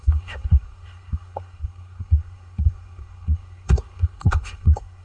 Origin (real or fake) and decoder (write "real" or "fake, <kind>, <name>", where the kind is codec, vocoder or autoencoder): fake, codec, SNAC